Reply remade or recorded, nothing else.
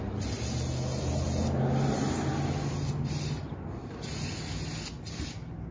recorded